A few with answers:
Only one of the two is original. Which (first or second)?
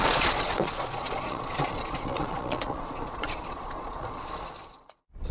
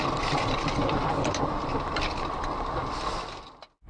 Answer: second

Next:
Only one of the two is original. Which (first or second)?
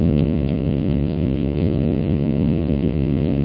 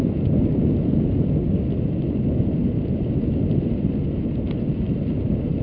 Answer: second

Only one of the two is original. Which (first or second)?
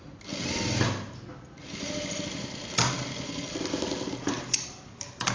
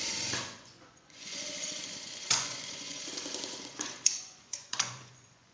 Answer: first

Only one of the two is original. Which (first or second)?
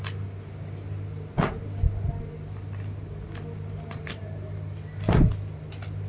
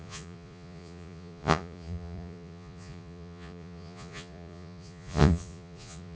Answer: first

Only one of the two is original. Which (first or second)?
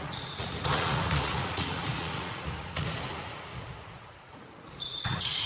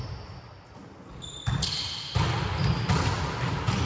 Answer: second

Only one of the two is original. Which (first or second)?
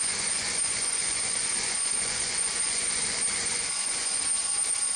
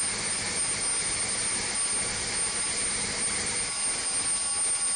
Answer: second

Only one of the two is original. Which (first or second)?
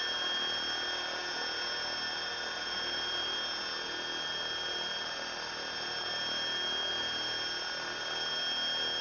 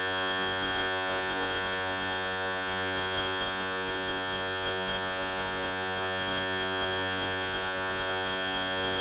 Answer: first